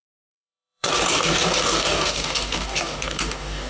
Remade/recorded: remade